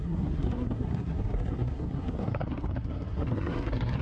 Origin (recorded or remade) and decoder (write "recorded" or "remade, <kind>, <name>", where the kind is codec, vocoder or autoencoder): remade, codec, SNAC